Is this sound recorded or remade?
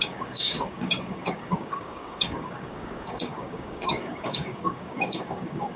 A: remade